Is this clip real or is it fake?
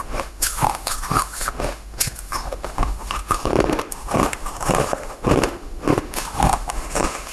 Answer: fake